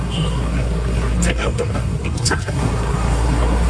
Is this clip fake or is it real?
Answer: fake